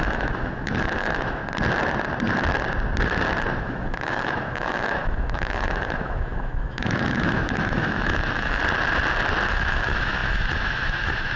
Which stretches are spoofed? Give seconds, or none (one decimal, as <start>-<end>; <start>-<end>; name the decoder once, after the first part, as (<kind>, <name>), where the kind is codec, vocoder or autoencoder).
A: 0.0-1.4 (autoencoder, DAC-VAE); 3.6-8.6; 9.5-11.4